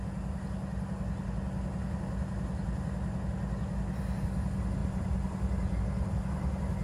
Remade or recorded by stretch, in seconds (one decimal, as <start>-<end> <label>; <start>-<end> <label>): 0.0-6.8 recorded